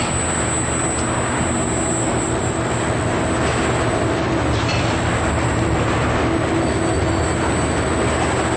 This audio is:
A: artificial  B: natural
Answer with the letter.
B